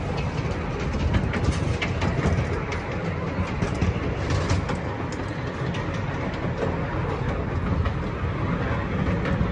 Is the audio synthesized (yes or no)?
no